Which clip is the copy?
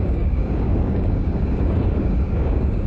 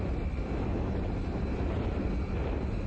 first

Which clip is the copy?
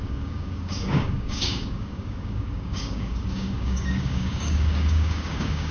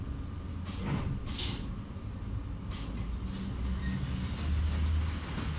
first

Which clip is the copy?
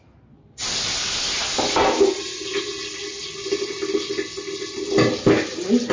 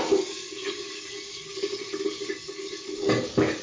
second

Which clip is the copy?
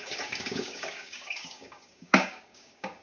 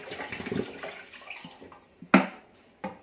first